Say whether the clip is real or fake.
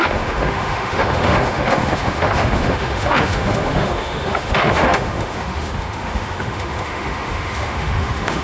fake